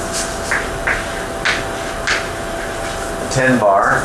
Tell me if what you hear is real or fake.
fake